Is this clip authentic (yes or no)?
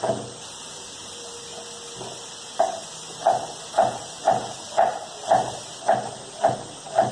yes